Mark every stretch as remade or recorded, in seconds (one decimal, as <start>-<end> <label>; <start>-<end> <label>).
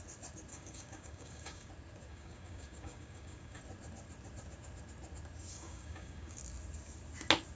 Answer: 0.0-0.5 recorded; 0.5-1.7 remade; 1.7-2.1 recorded; 2.1-3.6 remade; 3.6-5.5 recorded; 5.5-6.4 remade; 6.4-7.6 recorded